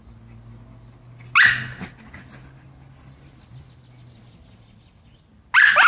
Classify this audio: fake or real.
real